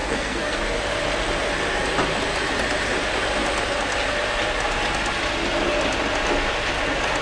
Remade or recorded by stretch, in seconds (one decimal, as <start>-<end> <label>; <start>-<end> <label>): 0.0-0.6 remade; 0.6-7.2 recorded